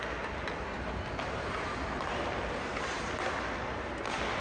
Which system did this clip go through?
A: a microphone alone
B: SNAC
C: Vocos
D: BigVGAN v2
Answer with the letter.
A